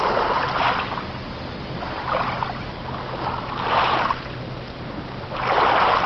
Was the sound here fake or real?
real